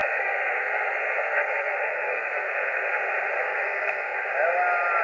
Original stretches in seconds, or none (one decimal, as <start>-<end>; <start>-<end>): 3.0-3.4; 4.3-5.0